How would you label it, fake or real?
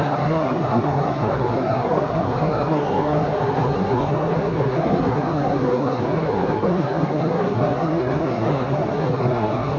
fake